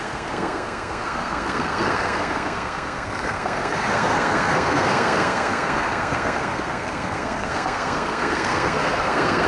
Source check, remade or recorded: remade